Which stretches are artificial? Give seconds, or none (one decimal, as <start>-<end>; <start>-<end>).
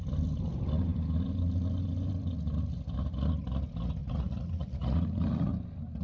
4.0-5.5